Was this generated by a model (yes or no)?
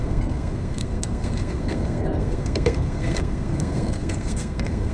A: yes